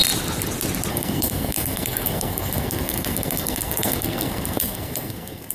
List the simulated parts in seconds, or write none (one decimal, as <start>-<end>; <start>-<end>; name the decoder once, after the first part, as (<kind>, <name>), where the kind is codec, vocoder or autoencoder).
0.9-5.5 (codec, SNAC)